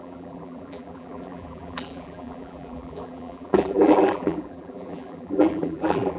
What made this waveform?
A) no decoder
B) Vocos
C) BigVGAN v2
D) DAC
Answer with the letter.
C